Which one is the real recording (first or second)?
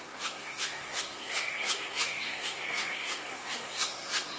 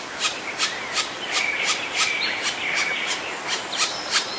second